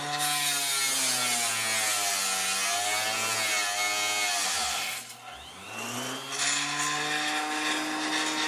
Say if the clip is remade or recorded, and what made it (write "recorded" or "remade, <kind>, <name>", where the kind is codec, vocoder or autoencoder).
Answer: recorded